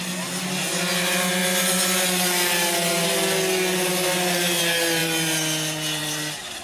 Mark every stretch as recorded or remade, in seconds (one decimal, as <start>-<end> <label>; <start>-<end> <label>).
0.0-6.6 recorded